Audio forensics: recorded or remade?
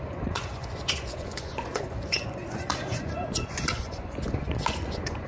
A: remade